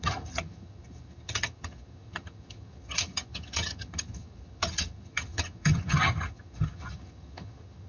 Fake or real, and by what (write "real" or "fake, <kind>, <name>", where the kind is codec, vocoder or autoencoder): fake, vocoder, HiFi-GAN